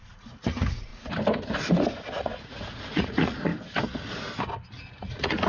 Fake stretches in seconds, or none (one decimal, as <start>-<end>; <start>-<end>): 0.0-0.9; 2.2-3.5; 4.8-5.5